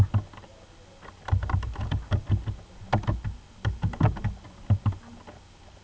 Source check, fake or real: real